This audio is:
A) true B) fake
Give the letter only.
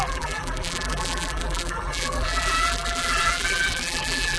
B